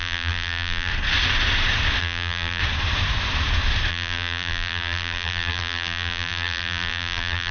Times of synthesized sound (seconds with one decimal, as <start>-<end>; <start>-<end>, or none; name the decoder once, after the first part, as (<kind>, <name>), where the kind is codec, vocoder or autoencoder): 0.0-0.9 (vocoder, BigVGAN v2); 2.0-2.6; 3.9-7.5